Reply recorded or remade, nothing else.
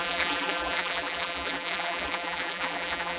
remade